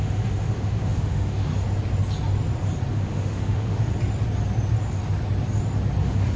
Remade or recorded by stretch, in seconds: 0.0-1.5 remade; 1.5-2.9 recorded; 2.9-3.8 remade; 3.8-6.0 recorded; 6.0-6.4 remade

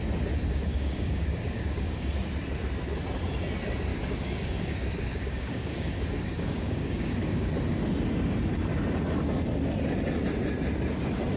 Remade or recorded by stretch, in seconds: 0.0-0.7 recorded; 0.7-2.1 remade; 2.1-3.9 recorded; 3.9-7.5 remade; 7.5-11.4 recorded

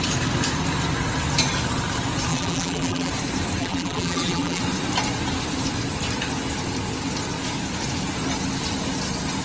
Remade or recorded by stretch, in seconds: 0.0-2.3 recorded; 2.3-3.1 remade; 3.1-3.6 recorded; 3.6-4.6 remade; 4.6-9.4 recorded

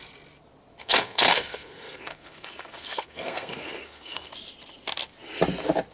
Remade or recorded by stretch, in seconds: 0.0-0.8 recorded; 0.8-4.3 remade; 4.3-5.9 recorded

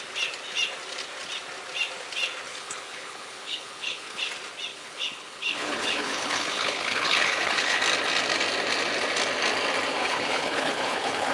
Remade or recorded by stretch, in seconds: 0.0-2.5 recorded; 2.5-4.2 remade; 4.2-4.7 recorded; 4.7-7.8 remade; 7.8-10.0 recorded; 10.0-11.3 remade

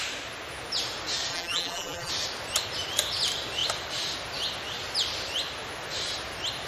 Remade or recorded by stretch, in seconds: 0.0-1.3 recorded; 1.3-2.1 remade; 2.1-6.7 recorded

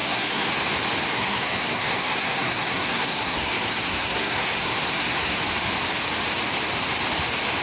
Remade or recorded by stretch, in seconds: 0.0-0.5 remade; 0.5-1.1 recorded; 1.1-5.4 remade; 5.4-7.6 recorded

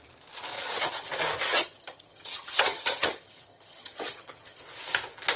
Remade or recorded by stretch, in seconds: 0.0-0.5 recorded; 0.5-1.1 remade; 1.1-1.5 recorded; 1.5-4.6 remade; 4.6-5.4 recorded